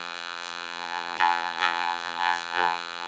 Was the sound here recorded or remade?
remade